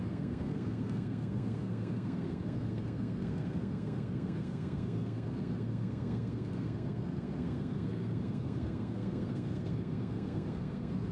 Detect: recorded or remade remade